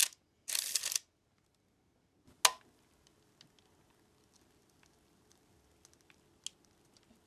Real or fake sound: real